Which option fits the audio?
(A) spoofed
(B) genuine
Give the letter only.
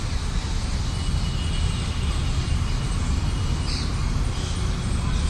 B